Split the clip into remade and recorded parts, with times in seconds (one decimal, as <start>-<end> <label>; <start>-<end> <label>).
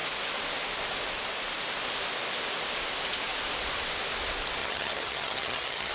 0.0-4.6 recorded; 4.6-5.9 remade